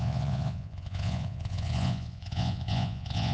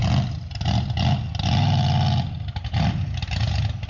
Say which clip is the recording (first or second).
second